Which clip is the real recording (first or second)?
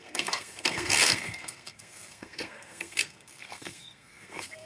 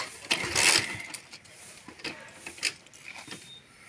second